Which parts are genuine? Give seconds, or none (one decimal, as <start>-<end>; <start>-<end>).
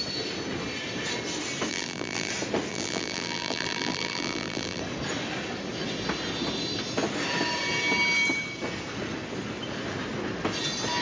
0.0-1.7; 2.3-2.7; 4.8-11.0